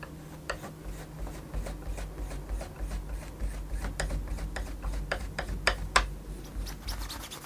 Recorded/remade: recorded